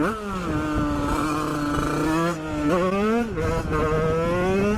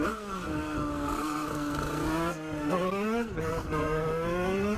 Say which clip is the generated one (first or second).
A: second